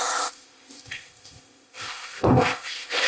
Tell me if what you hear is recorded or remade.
remade